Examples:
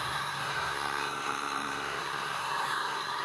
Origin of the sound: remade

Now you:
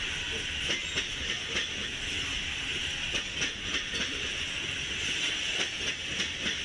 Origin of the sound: recorded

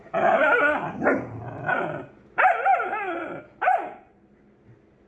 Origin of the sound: recorded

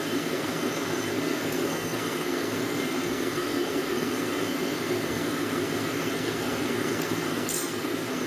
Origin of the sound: remade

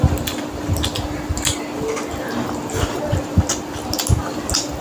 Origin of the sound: recorded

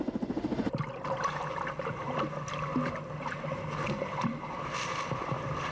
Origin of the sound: recorded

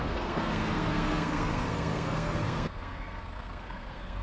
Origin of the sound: remade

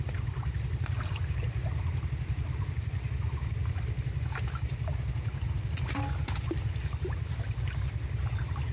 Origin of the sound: recorded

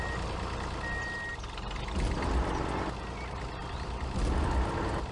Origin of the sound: recorded